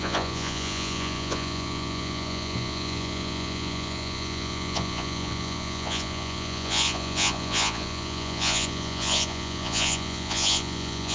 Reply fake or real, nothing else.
fake